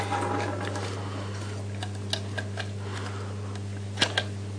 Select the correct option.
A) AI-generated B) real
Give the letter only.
B